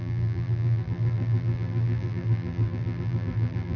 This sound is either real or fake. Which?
fake